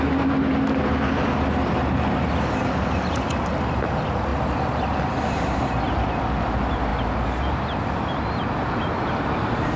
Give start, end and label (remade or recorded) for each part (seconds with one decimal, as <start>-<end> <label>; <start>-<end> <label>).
0.0-9.8 recorded